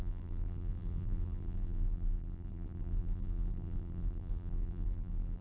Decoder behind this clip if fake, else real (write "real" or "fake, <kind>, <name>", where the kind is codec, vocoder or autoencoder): fake, vocoder, BigVGAN v2